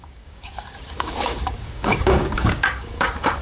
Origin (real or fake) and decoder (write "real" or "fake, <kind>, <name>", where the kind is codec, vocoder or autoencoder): fake, codec, DAC